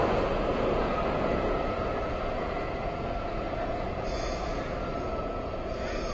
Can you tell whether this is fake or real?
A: fake